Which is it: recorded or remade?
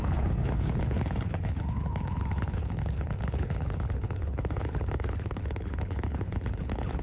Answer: remade